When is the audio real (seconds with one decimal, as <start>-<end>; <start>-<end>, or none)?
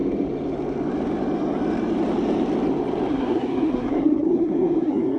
0.0-3.1